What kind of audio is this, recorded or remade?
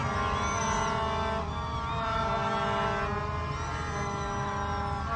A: recorded